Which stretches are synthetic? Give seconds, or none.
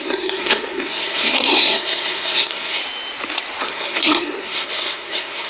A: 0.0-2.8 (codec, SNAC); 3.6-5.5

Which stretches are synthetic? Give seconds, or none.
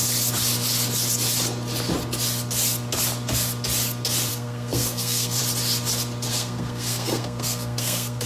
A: 4.3-5.4 (codec, SNAC); 6.3-8.3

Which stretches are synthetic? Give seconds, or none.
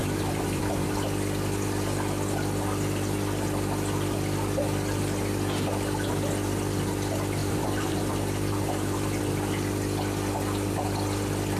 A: 0.0-0.6 (vocoder, BigVGAN v2); 7.4-9.2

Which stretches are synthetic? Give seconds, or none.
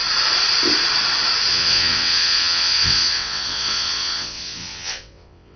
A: 1.5-5.6 (vocoder, WaveNeXt)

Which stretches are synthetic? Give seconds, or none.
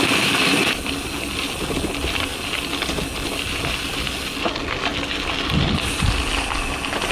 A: none